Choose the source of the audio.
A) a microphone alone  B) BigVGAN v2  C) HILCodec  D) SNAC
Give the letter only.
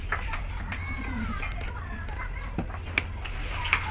A